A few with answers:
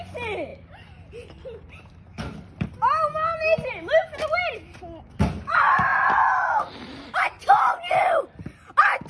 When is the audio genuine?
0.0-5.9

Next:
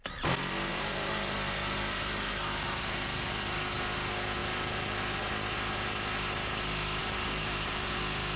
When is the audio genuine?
0.0-0.7; 3.3-4.4; 5.2-7.0; 7.9-8.4

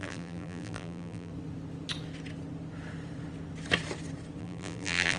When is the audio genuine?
1.3-4.4

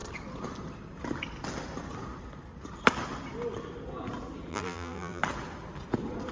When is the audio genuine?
0.0-4.5; 5.2-6.3